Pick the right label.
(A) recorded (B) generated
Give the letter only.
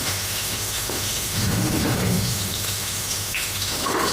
B